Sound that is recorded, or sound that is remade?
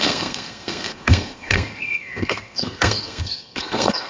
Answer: remade